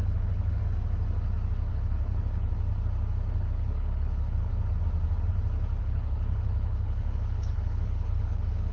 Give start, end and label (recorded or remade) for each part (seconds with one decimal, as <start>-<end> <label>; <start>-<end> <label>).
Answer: 0.0-0.6 remade; 0.6-1.7 recorded; 1.7-2.5 remade; 2.5-3.3 recorded; 3.3-4.5 remade; 4.5-5.8 recorded; 5.8-8.7 remade